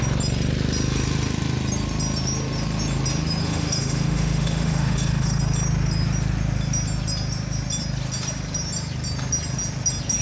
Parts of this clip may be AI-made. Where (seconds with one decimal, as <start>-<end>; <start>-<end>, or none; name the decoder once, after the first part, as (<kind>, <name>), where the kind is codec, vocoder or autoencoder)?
3.4-5.4 (autoencoder, DAC-VAE)